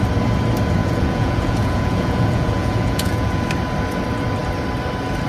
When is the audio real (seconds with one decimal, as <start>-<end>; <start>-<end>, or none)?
0.0-0.8; 3.4-5.3